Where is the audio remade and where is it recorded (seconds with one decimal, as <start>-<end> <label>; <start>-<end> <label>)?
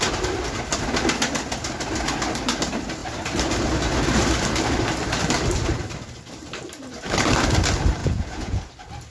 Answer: 0.0-8.0 recorded; 8.0-8.7 remade; 8.7-9.1 recorded